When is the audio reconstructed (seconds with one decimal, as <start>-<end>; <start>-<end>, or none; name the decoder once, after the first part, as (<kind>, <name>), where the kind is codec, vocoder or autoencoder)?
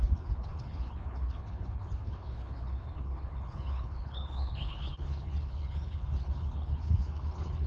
0.0-7.7 (codec, HILCodec)